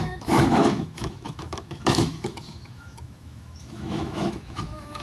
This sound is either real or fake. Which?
fake